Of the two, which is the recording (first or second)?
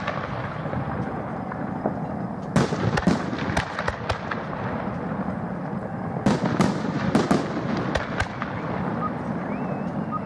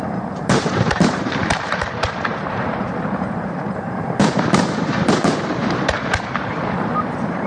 first